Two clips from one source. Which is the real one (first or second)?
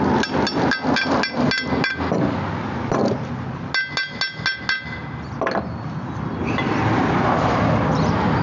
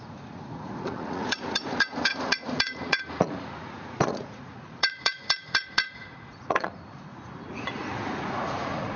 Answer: first